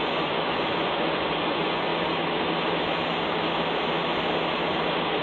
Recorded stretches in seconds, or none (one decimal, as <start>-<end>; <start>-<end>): 1.9-5.2